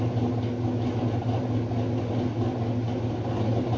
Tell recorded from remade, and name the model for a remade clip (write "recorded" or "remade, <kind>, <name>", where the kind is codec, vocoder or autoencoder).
recorded